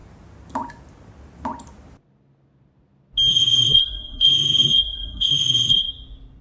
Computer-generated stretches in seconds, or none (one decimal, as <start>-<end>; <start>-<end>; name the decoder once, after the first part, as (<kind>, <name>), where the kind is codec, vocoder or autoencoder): 3.3-5.9 (codec, SNAC)

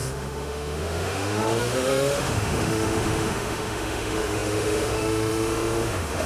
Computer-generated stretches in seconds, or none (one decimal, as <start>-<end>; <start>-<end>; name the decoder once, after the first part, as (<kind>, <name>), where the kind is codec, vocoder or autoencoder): 0.0-6.3 (autoencoder, DAC-VAE)

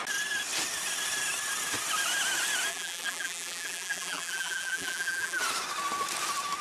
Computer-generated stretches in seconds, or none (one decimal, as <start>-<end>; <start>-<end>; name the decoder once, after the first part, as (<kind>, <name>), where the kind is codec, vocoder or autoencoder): 2.7-5.4 (vocoder, BigVGAN v2)

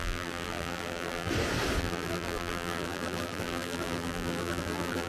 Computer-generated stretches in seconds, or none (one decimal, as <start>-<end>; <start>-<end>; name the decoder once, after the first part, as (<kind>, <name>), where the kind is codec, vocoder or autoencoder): 0.0-1.3 (vocoder, BigVGAN v2); 1.8-5.1

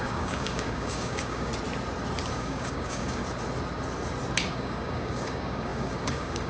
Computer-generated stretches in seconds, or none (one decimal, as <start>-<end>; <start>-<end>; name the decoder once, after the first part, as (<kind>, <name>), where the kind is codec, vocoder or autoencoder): 0.0-1.5 (codec, DAC); 2.3-3.2; 4.5-6.5